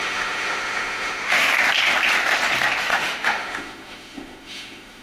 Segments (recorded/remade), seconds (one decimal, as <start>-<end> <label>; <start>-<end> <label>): 0.0-1.5 remade; 1.5-2.8 recorded; 2.8-5.0 remade